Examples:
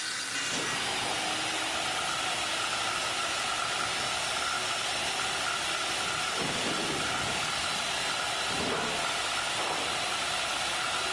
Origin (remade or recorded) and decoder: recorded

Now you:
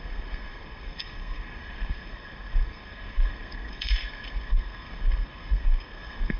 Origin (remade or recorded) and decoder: remade, codec, SNAC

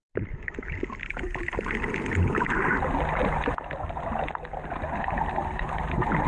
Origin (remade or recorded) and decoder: recorded